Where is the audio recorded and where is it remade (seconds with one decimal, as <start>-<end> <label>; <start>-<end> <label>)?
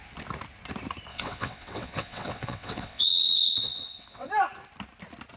0.0-1.1 recorded; 1.1-4.3 remade; 4.3-5.4 recorded